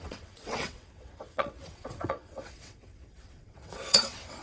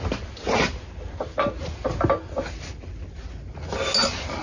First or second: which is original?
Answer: second